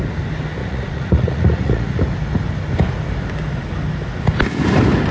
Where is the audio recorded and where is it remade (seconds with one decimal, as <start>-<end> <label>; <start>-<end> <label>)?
0.0-0.6 recorded; 0.6-2.0 remade; 2.0-5.1 recorded